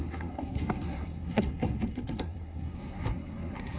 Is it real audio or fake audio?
fake